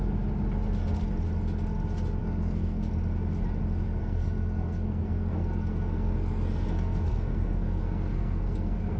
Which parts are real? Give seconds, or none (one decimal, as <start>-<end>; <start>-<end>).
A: 0.0-2.2; 2.9-4.0

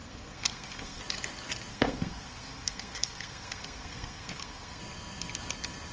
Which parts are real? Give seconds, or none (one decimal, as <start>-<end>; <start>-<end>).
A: 1.0-1.7; 4.8-5.9

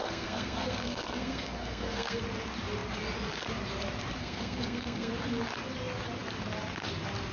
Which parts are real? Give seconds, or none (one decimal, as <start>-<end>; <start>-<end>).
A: 2.2-4.2; 5.1-7.3

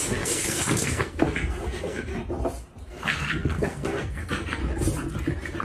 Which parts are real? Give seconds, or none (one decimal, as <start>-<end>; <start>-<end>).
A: 2.1-2.9; 4.6-5.6